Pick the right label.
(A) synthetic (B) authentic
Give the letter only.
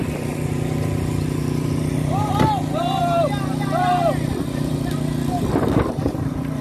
A